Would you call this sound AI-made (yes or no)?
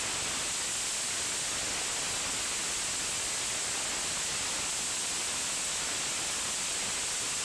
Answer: no